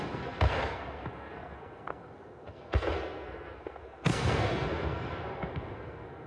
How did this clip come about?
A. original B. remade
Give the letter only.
B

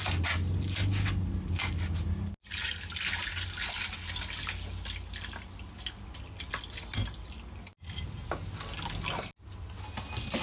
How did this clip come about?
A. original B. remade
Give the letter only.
A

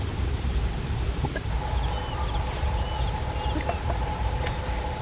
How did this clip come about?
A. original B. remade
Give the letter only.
A